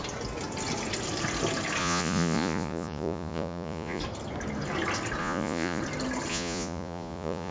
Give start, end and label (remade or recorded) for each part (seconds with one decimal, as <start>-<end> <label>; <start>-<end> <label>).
0.0-1.8 recorded; 1.8-4.0 remade; 4.0-5.2 recorded; 5.2-5.8 remade; 5.8-6.3 recorded; 6.3-7.5 remade